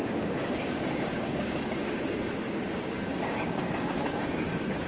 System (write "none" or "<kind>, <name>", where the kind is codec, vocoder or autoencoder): codec, DAC